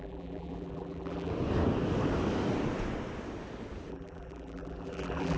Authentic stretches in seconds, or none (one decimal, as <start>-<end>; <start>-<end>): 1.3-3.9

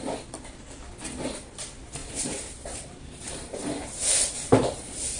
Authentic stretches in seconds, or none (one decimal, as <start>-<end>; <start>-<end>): 0.0-2.0

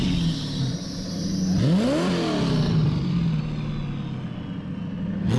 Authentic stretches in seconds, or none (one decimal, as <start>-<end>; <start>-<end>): 0.0-2.8; 3.7-5.4

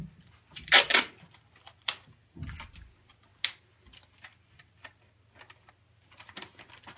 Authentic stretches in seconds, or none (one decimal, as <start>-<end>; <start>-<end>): 0.0-1.8; 2.4-7.0

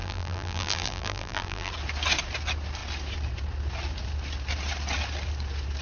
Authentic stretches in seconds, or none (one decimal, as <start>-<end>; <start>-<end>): 1.7-5.8